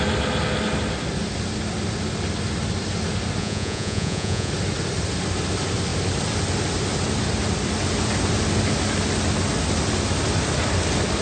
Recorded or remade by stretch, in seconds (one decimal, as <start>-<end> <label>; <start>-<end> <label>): 0.0-3.4 recorded; 3.4-4.5 remade; 4.5-11.2 recorded

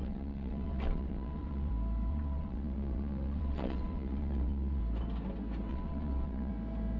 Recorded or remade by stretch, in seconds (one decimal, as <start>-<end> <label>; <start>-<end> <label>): 0.0-1.7 remade; 1.7-2.1 recorded; 2.1-4.8 remade; 4.8-5.7 recorded; 5.7-6.5 remade; 6.5-7.0 recorded